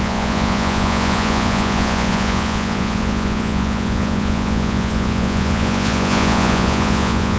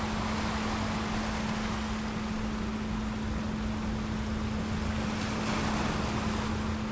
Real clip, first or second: second